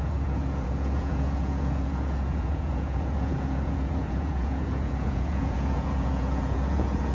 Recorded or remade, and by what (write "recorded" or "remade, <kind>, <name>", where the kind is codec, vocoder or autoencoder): remade, vocoder, Vocos